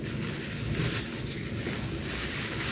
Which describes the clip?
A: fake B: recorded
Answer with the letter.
B